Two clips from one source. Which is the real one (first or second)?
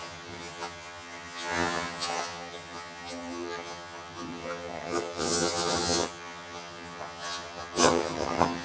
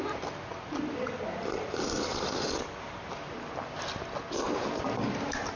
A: second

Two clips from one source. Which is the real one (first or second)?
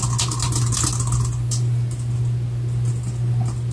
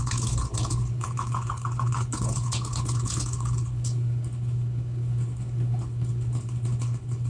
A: first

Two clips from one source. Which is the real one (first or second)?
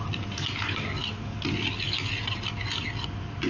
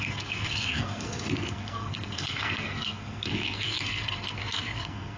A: first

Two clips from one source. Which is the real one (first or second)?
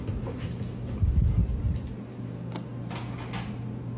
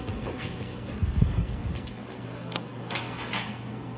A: first